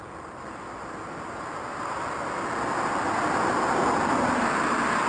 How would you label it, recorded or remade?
recorded